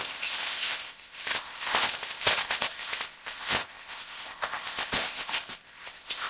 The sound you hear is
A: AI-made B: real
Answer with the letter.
A